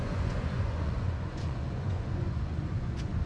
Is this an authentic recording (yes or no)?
no